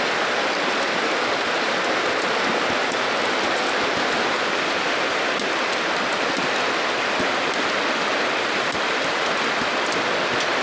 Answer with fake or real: real